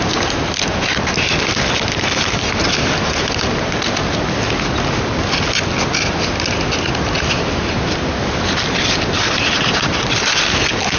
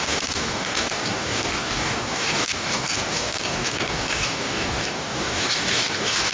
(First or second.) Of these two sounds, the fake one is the second